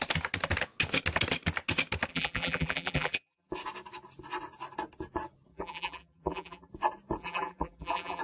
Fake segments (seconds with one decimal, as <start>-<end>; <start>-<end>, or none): 2.1-3.5; 5.5-6.7; 7.2-8.2